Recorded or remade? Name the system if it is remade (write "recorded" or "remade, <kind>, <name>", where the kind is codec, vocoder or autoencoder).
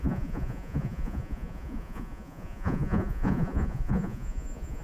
remade, vocoder, Vocos